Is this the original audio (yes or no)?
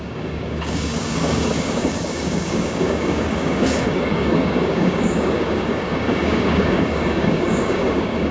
no